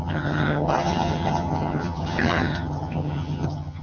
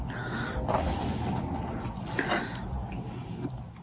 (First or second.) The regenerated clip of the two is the first